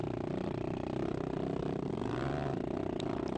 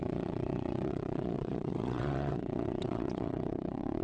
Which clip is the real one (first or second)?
first